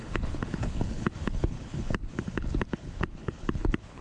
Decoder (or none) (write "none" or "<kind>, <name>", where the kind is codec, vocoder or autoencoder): codec, HILCodec